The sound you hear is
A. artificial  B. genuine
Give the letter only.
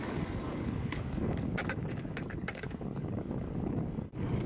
A